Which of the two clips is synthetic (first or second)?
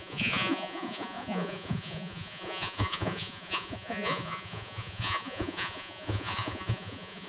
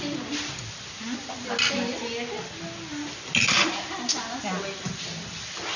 first